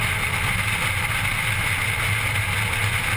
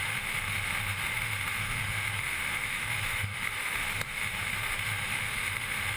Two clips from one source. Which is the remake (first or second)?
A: second